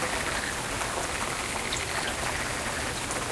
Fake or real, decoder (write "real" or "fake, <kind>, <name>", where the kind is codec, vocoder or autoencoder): real